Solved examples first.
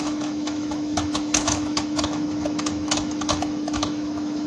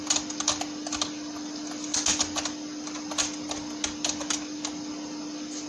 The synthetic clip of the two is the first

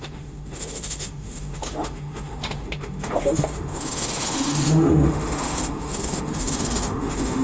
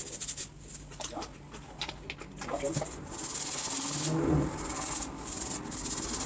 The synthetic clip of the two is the first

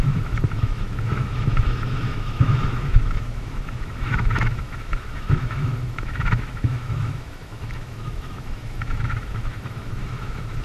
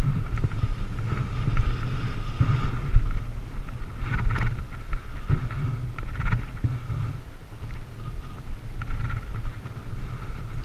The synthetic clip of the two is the first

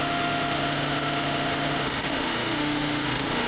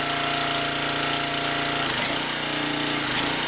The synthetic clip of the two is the first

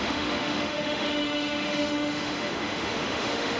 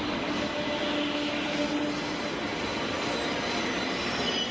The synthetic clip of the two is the first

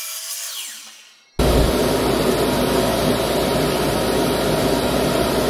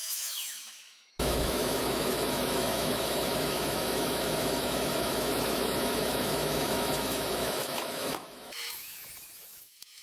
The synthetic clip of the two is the second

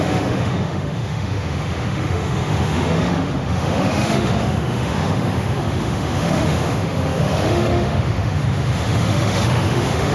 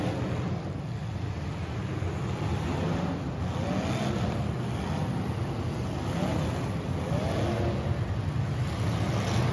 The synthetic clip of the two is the first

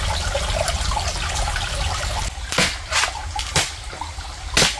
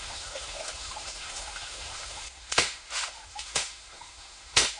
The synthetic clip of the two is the second